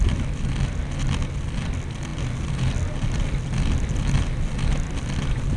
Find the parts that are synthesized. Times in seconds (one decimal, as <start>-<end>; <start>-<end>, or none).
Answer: none